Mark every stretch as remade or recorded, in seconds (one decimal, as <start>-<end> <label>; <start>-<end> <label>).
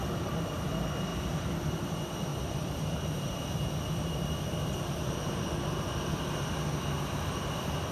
0.0-1.1 recorded; 1.1-1.9 remade; 1.9-2.3 recorded; 2.3-3.4 remade; 3.4-7.9 recorded